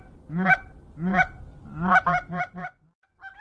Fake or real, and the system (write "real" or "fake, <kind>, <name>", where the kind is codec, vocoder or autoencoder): real